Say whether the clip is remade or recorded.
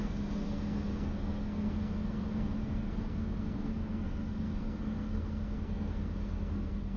remade